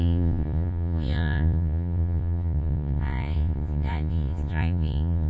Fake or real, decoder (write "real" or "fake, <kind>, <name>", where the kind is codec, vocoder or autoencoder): fake, vocoder, Vocos